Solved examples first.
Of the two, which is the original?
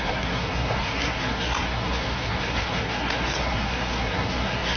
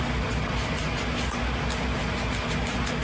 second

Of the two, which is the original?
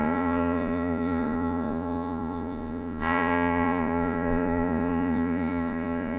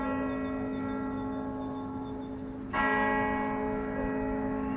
second